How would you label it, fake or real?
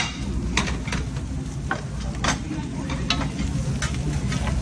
real